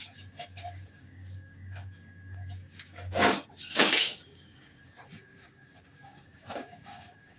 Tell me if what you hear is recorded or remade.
remade